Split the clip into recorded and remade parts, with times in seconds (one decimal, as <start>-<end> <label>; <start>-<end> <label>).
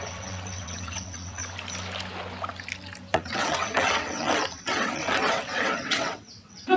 0.0-1.4 remade; 1.4-3.1 recorded; 3.1-6.8 remade